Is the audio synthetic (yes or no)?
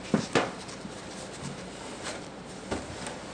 yes